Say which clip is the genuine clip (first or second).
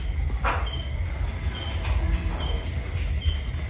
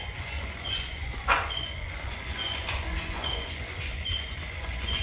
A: first